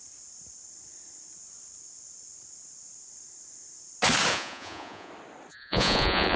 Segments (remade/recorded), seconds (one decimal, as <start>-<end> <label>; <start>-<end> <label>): 0.0-4.3 recorded; 4.3-5.1 remade; 5.1-5.5 recorded; 5.5-6.4 remade